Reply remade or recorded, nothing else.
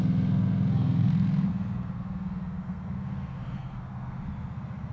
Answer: remade